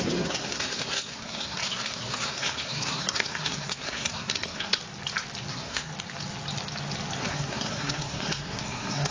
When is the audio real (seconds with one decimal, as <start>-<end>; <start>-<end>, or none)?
4.8-5.5; 5.9-7.2